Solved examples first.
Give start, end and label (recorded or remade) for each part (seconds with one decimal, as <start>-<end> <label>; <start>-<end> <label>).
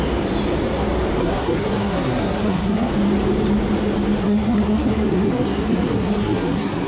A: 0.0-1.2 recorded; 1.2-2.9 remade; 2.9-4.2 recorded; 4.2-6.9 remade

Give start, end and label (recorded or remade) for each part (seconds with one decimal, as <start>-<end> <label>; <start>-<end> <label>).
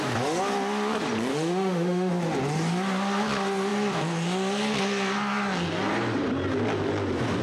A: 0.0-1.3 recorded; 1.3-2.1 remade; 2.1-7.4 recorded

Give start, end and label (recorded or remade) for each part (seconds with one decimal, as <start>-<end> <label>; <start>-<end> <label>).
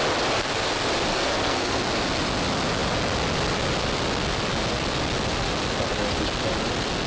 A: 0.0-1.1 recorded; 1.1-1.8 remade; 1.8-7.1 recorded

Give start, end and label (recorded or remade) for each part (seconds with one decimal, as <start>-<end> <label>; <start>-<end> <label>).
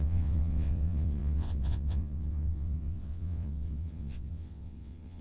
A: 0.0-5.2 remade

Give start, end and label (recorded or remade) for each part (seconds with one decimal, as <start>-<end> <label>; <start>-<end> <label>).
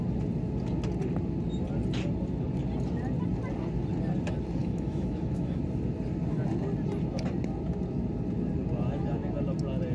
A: 0.0-4.6 recorded; 4.6-5.6 remade; 5.6-9.9 recorded